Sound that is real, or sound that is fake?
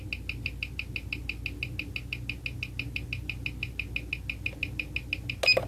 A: real